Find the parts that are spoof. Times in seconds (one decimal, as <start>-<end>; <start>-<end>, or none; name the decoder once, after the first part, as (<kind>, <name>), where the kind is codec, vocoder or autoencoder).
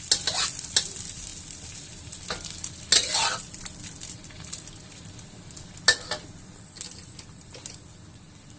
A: none